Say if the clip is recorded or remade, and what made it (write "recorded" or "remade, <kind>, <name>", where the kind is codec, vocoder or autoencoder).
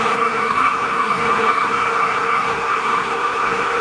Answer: remade, codec, SNAC